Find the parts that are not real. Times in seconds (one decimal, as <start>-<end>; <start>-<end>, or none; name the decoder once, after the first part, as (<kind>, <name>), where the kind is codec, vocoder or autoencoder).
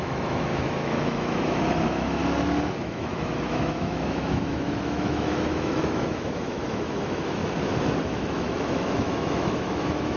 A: 0.0-2.2 (autoencoder, DAC-VAE); 2.8-7.4; 8.0-10.2